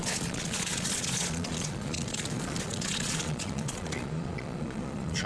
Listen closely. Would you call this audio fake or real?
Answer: fake